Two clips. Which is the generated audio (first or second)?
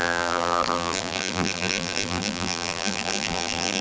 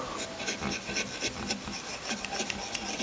first